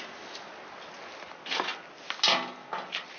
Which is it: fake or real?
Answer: real